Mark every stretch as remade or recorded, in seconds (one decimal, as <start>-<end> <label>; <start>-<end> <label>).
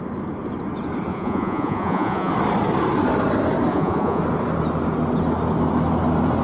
0.0-1.1 recorded; 1.1-2.3 remade; 2.3-3.7 recorded; 3.7-4.2 remade; 4.2-6.4 recorded